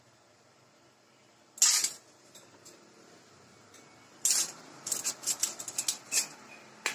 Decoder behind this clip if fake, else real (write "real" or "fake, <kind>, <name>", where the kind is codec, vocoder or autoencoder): real